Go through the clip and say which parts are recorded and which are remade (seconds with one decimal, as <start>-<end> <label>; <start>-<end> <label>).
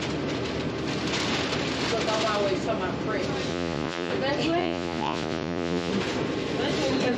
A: 0.0-3.5 recorded; 3.5-4.1 remade; 4.1-4.6 recorded; 4.6-5.9 remade; 5.9-7.2 recorded